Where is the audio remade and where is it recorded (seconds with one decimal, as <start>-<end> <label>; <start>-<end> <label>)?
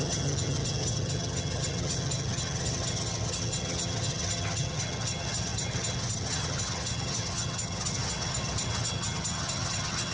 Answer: 0.0-10.1 remade